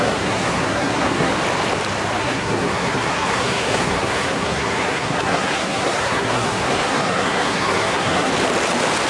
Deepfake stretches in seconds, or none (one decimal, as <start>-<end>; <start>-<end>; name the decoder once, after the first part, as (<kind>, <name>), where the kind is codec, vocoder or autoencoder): 0.0-1.3 (codec, SNAC); 2.2-8.3